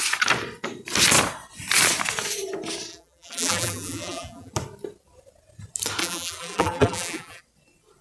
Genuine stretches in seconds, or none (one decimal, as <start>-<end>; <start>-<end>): 0.0-2.9; 4.5-6.0; 7.4-8.0